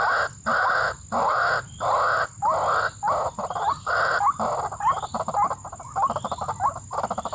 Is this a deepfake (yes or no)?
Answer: no